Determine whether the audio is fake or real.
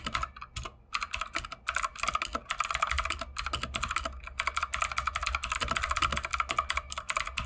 real